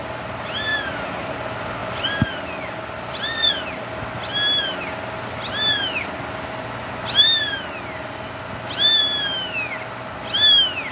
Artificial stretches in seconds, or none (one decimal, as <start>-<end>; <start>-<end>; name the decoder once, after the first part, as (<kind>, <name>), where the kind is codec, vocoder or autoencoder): 0.7-1.3 (vocoder, BigVGAN v2); 1.8-3.5